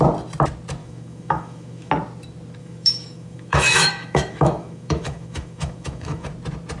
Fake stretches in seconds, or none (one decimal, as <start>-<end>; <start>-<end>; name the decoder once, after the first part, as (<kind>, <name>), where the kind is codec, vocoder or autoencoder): 0.8-1.9 (autoencoder, DAC-VAE); 2.6-6.3